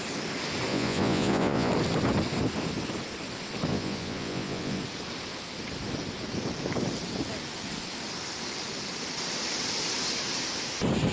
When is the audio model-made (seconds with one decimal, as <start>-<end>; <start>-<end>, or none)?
0.7-1.7; 3.7-4.8